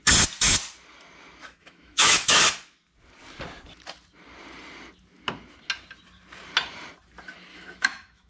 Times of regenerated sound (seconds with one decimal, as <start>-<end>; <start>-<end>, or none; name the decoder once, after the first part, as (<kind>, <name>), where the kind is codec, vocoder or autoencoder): 1.4-2.4 (autoencoder, DAC-VAE); 7.5-8.3